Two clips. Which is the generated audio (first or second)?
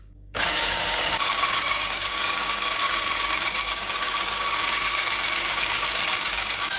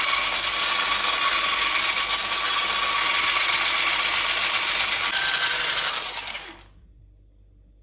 first